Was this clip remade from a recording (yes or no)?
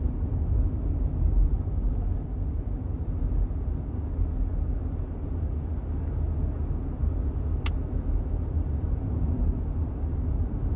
no